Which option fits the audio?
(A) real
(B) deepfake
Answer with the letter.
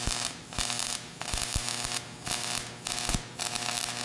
A